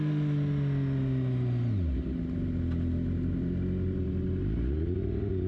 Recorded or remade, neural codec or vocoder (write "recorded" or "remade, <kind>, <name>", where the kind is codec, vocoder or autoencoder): recorded